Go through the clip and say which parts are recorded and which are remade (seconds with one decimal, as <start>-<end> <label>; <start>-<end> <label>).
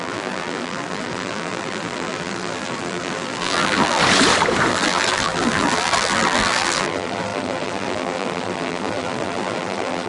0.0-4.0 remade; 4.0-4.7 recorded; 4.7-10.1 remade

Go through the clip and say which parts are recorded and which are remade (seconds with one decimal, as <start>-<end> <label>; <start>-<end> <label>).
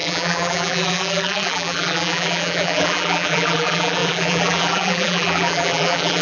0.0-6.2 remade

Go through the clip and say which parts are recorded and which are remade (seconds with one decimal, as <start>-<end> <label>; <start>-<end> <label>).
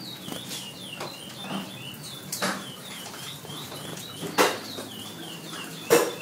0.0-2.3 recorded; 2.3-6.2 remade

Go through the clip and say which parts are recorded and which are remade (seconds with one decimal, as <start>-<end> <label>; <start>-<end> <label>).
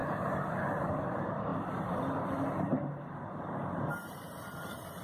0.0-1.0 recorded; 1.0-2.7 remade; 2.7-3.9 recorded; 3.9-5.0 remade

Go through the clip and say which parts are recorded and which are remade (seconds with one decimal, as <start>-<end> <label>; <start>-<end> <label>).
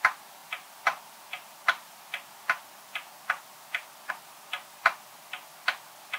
0.0-6.2 recorded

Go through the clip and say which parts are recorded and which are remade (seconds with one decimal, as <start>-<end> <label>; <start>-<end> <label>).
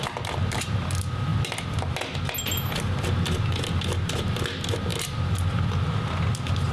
0.0-6.7 recorded